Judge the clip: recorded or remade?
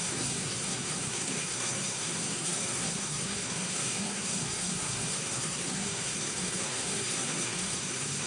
remade